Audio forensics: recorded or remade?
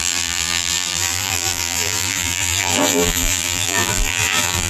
remade